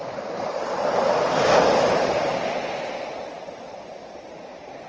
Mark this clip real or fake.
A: fake